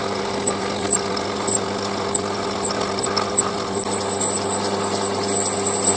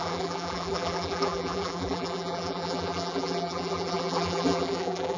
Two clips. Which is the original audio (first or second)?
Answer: first